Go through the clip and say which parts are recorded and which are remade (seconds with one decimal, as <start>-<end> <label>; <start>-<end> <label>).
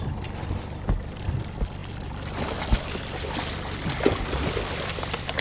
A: 0.0-5.4 recorded